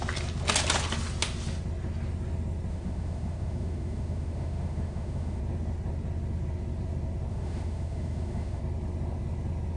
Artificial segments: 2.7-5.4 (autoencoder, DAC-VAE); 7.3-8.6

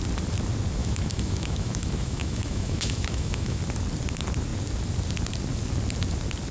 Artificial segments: 0.8-3.6 (autoencoder, DAC-VAE)